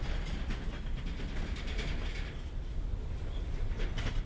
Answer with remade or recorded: recorded